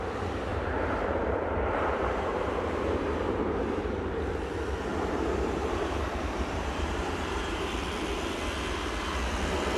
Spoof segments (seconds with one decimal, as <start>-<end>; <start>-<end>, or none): 0.5-3.4; 4.9-7.7